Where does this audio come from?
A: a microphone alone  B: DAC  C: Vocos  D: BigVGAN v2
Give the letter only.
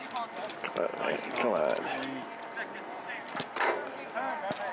A